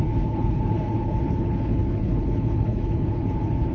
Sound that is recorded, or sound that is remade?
remade